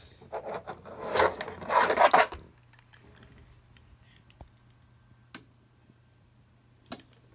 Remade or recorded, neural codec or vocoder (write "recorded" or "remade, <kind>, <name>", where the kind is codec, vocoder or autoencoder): recorded